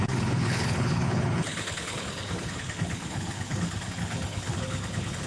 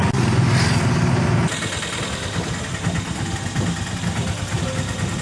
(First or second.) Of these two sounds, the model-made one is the first